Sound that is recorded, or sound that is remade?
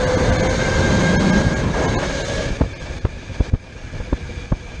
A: recorded